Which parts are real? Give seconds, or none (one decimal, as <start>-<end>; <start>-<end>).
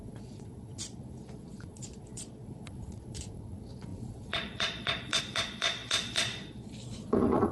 none